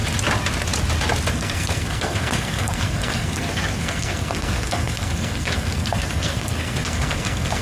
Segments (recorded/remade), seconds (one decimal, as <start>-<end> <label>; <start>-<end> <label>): 0.0-1.3 recorded; 1.3-7.6 remade